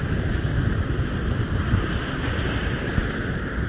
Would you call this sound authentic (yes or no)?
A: yes